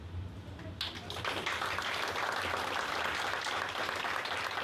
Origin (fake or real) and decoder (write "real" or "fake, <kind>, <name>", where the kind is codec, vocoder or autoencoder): real